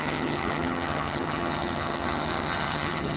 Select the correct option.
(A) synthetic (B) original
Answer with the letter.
A